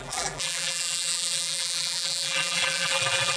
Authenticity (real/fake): fake